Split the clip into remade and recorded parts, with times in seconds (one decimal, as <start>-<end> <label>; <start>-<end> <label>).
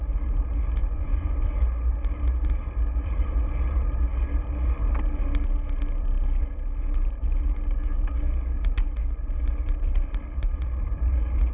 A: 0.0-0.8 recorded; 0.8-1.4 remade; 1.4-11.5 recorded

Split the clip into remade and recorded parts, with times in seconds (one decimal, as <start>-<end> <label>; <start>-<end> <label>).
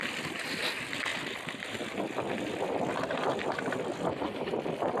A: 0.0-0.6 remade; 0.6-5.0 recorded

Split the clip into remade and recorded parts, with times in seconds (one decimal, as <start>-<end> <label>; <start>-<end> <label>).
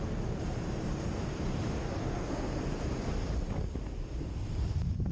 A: 0.0-2.0 recorded; 2.0-2.6 remade; 2.6-5.1 recorded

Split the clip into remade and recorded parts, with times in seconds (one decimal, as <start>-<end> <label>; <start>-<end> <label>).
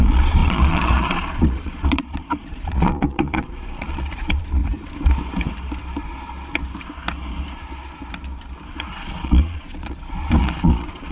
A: 0.0-4.6 remade; 4.6-8.8 recorded; 8.8-11.1 remade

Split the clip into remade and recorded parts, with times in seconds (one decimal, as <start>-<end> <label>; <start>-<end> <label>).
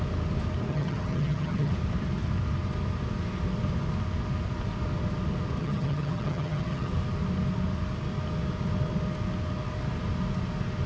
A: 0.0-0.7 recorded; 0.7-1.7 remade; 1.7-5.6 recorded; 5.6-6.9 remade; 6.9-10.9 recorded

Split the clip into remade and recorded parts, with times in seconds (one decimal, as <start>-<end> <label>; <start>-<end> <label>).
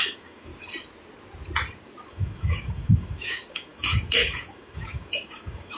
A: 0.0-0.5 remade; 0.5-2.1 recorded; 2.1-5.8 remade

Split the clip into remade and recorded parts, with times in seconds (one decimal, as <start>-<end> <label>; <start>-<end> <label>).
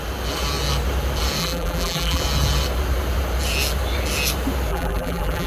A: 0.0-1.4 recorded; 1.4-2.2 remade; 2.2-4.7 recorded; 4.7-5.5 remade